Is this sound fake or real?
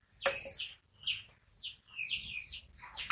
real